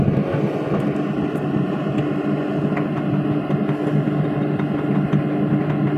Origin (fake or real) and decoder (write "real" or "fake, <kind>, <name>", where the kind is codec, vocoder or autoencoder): real